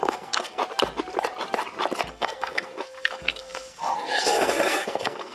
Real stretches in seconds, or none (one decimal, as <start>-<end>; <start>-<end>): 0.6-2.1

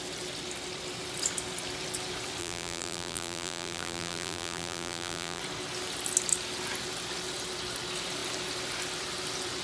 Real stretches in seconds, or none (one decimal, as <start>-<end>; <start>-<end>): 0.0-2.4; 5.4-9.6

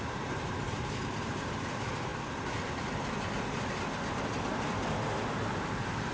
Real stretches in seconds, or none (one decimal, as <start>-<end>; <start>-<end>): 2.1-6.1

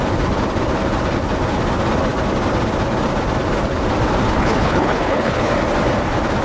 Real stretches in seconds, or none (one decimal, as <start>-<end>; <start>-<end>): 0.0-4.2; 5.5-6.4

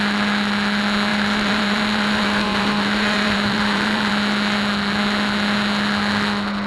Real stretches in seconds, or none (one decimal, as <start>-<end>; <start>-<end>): 0.0-1.1; 4.1-6.7

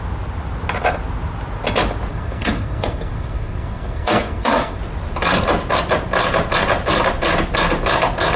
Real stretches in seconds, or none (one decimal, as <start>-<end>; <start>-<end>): 0.0-2.1; 4.8-8.4

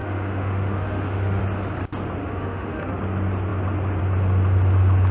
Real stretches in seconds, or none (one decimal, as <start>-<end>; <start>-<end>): 1.4-2.2; 3.0-5.1